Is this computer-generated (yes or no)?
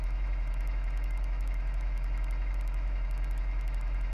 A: yes